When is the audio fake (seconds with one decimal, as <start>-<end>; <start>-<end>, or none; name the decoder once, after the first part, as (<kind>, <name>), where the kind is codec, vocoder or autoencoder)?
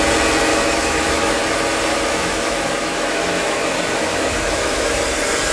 0.5-1.4 (autoencoder, DAC-VAE); 1.9-4.9